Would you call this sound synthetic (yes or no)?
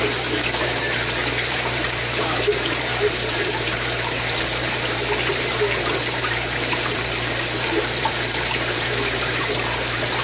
yes